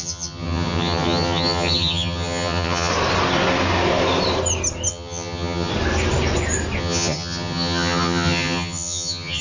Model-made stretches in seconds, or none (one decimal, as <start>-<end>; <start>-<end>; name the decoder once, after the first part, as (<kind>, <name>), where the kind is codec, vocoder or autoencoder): 0.0-2.9 (vocoder, HiFi-GAN); 4.9-5.7; 6.8-9.4